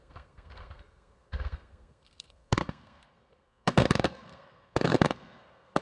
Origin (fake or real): fake